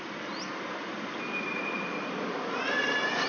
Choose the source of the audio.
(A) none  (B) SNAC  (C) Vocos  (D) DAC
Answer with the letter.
A